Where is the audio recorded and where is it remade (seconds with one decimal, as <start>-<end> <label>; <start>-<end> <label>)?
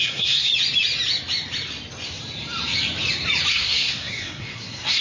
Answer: 0.0-0.5 remade; 0.5-3.5 recorded; 3.5-5.0 remade